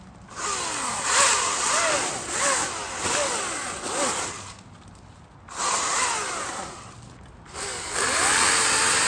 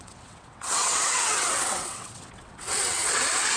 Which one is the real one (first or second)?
first